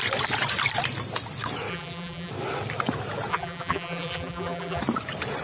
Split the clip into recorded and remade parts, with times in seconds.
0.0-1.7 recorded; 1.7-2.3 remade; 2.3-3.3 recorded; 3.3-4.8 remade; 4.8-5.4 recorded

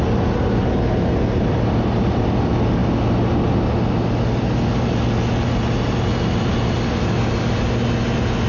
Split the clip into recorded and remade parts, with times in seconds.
0.0-8.5 recorded

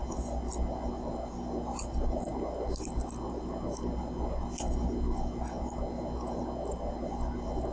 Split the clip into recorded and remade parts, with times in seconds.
0.0-7.7 recorded

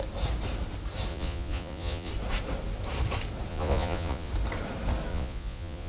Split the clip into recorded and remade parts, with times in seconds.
0.0-1.1 recorded; 1.1-2.1 remade; 2.1-3.5 recorded; 3.5-4.3 remade; 4.3-5.1 recorded; 5.1-5.9 remade

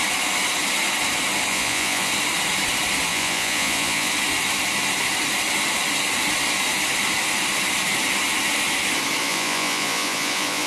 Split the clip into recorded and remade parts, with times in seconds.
0.0-1.5 recorded; 1.5-2.1 remade; 2.1-3.1 recorded; 3.1-4.1 remade; 4.1-9.2 recorded; 9.2-10.7 remade

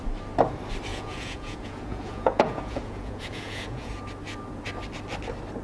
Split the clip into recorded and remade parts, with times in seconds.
0.0-0.9 recorded; 0.9-3.9 remade; 3.9-5.6 recorded

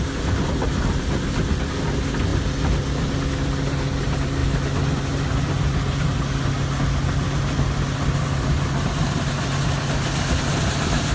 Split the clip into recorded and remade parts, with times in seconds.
0.0-11.1 recorded